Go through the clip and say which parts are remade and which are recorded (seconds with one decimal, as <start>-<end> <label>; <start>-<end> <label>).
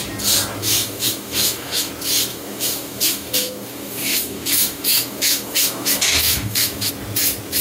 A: 0.0-0.6 recorded; 0.6-1.9 remade; 1.9-2.3 recorded; 2.3-6.9 remade; 6.9-7.6 recorded